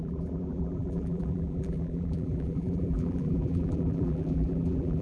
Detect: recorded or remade remade